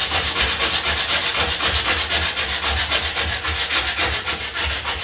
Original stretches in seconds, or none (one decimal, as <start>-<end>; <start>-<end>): 0.6-4.0

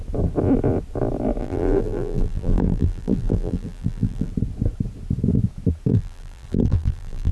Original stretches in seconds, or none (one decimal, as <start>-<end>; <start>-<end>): 0.0-1.4; 4.3-5.9

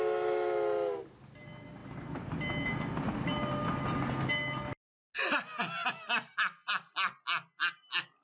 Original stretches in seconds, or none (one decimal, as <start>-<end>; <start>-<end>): 0.0-8.2

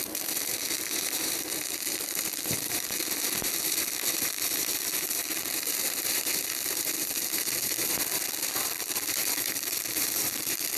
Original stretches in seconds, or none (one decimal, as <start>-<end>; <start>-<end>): none

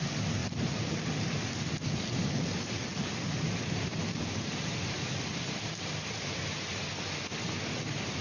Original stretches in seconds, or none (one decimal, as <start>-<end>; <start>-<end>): 0.0-0.4; 1.0-3.1; 6.4-8.2

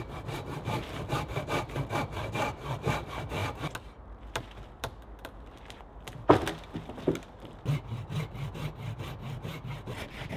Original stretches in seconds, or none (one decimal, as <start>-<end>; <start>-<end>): 3.4-4.0